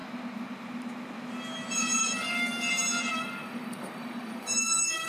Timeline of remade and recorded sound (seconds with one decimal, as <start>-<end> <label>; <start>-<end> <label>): 0.0-2.0 recorded; 2.0-2.7 remade; 2.7-3.1 recorded; 3.1-5.1 remade